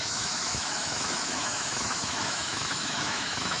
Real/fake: fake